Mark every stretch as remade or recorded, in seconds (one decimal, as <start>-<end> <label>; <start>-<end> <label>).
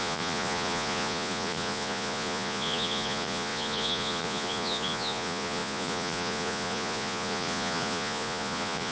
0.0-8.9 remade